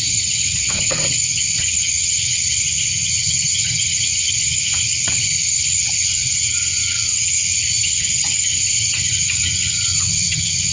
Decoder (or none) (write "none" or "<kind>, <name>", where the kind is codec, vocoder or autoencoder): vocoder, HiFi-GAN